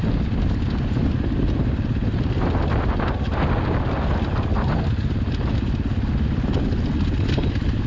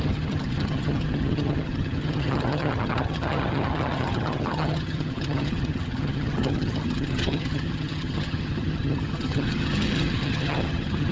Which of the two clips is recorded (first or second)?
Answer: first